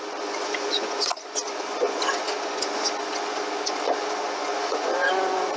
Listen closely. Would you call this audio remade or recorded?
remade